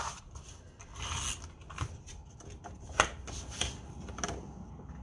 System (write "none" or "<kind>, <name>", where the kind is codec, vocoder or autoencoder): none